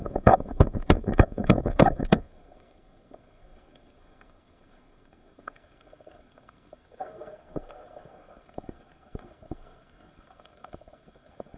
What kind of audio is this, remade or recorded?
remade